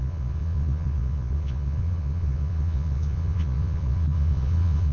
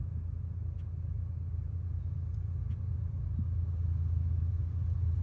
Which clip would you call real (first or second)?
second